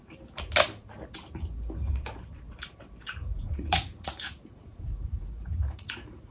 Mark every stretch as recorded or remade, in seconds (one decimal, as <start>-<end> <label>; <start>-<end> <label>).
0.0-3.2 recorded; 3.2-6.3 remade